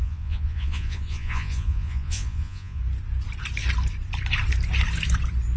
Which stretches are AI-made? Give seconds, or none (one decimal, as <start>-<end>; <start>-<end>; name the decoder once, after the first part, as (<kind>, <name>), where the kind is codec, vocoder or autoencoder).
0.0-2.8 (vocoder, Vocos)